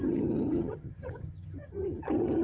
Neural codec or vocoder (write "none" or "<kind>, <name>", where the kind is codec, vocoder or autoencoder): vocoder, HiFi-GAN